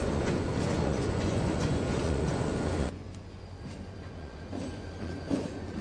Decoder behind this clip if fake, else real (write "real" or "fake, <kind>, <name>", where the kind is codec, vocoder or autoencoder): fake, vocoder, Vocos